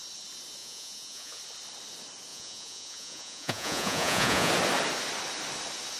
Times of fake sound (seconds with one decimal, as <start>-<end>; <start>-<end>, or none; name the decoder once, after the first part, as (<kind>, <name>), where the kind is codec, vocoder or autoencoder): 0.6-1.4 (vocoder, Vocos); 2.3-4.5